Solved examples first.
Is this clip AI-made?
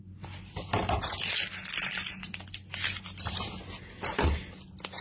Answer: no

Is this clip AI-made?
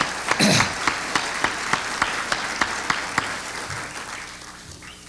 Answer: no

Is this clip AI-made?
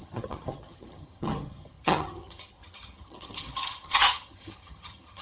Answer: yes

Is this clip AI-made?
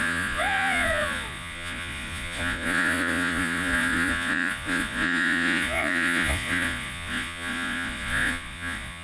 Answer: yes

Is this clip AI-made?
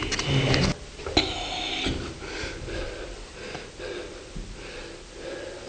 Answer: no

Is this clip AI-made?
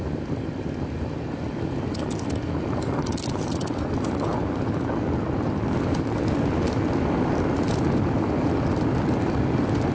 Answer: no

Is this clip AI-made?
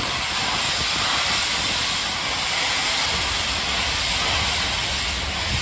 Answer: no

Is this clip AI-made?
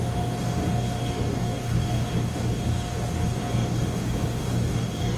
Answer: yes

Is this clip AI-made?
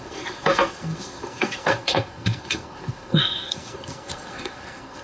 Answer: yes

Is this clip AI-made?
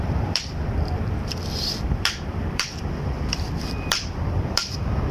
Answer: yes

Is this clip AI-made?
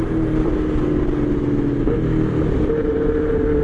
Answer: no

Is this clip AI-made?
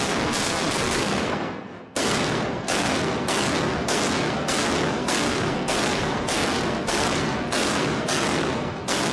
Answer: yes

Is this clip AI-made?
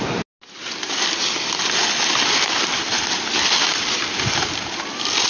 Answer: no